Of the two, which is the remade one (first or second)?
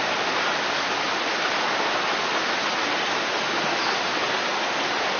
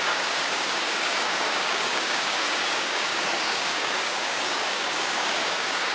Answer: second